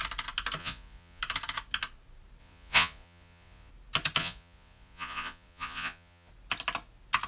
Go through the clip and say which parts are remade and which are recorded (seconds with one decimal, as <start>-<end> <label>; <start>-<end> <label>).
0.0-0.6 recorded; 0.6-1.2 remade; 1.2-2.4 recorded; 2.4-3.7 remade; 3.7-4.2 recorded; 4.2-6.3 remade; 6.3-7.3 recorded